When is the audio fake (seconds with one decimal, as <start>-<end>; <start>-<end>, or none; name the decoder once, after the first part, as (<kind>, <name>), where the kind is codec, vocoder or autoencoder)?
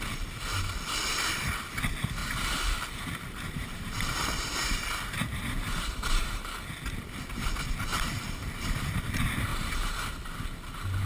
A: 2.2-6.7 (vocoder, BigVGAN v2); 7.9-9.0; 9.5-10.1